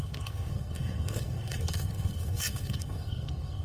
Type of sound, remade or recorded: remade